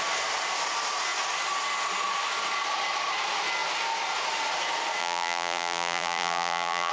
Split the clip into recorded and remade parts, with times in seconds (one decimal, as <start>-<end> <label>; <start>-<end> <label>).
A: 0.0-5.0 recorded; 5.0-6.9 remade